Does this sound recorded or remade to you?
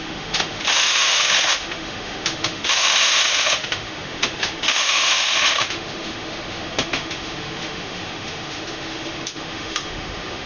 remade